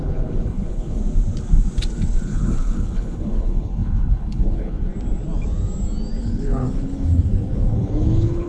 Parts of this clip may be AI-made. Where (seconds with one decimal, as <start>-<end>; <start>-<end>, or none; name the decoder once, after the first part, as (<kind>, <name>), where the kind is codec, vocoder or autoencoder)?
0.0-1.0 (codec, HILCodec); 1.9-4.9; 6.2-8.5